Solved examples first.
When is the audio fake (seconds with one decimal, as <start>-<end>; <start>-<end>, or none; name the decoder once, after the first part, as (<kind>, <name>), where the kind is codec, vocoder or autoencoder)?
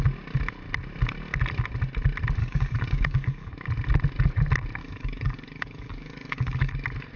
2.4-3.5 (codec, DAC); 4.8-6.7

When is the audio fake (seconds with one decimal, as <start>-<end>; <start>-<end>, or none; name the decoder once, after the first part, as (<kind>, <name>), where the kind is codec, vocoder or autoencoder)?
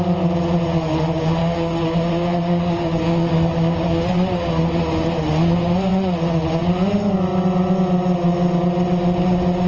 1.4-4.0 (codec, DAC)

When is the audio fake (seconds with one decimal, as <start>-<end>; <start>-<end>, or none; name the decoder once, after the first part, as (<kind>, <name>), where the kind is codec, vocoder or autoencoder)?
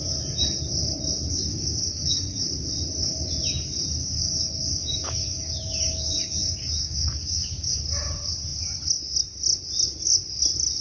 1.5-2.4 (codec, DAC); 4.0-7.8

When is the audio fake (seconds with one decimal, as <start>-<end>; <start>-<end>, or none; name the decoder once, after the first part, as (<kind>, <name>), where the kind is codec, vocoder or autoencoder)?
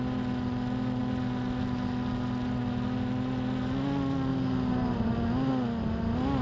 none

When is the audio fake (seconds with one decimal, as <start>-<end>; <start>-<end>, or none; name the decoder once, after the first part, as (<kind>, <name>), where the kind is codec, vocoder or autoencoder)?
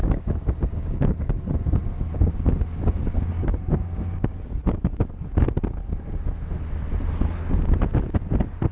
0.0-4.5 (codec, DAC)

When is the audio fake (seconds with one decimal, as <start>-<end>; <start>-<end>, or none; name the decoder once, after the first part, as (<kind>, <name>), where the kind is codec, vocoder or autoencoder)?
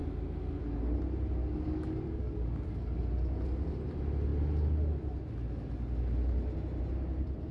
1.4-3.0 (codec, DAC)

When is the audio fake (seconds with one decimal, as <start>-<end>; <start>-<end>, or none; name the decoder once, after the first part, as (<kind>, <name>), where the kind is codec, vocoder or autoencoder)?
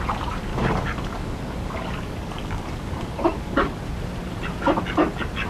0.5-3.8 (codec, DAC)